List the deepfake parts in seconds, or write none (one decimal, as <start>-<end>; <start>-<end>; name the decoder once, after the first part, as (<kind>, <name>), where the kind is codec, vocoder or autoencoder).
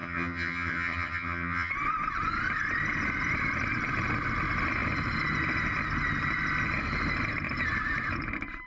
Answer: 0.0-1.7 (vocoder, HiFi-GAN)